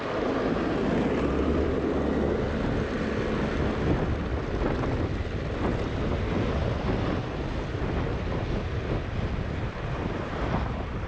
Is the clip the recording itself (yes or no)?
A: yes